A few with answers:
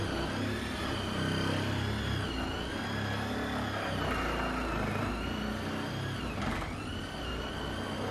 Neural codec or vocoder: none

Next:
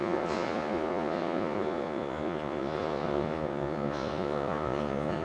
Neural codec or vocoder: vocoder, Vocos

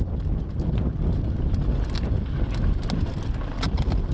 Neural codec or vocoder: none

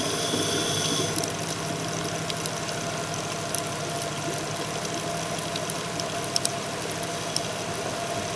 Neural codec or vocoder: none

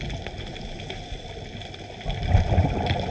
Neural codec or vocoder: none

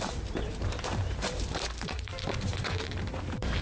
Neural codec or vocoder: vocoder, BigVGAN v2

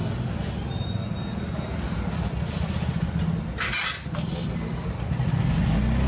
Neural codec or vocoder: none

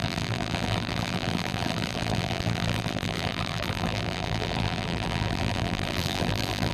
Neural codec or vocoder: vocoder, BigVGAN v2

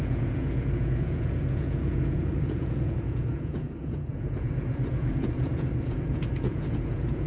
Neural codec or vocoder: vocoder, Vocos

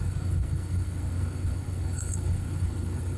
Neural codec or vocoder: codec, SNAC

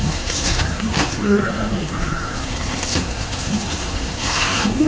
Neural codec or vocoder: codec, SNAC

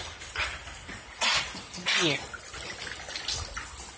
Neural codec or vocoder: none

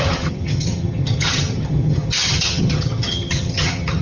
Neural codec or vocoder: vocoder, HiFi-GAN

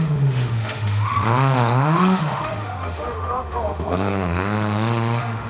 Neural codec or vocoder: autoencoder, DAC-VAE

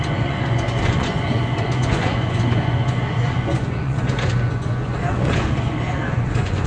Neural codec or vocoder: vocoder, Vocos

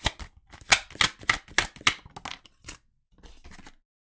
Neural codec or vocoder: none